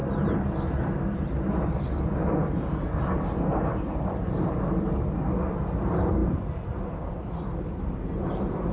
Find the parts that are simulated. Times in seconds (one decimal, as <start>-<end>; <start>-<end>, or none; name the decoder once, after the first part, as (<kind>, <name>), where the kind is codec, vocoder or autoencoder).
6.2-7.1 (vocoder, BigVGAN v2)